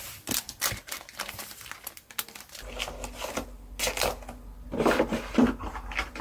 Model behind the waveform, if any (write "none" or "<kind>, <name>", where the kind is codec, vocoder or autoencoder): none